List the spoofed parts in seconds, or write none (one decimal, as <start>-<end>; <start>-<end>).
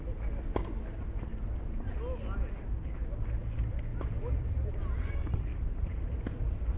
1.3-1.9; 3.9-5.1; 5.5-6.2